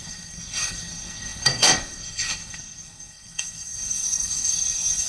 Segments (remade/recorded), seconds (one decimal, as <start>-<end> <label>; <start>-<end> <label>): 0.0-5.1 remade